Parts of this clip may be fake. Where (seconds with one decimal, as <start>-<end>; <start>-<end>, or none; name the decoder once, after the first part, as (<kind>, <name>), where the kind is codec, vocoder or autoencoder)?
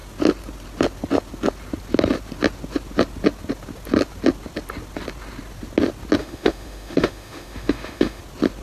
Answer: 6.2-8.2 (autoencoder, DAC-VAE)